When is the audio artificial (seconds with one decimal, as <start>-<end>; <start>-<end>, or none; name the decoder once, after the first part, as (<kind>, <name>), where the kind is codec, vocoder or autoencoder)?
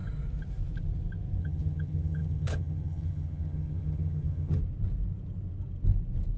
1.4-4.6 (vocoder, HiFi-GAN)